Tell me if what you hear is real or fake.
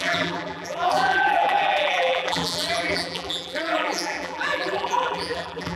fake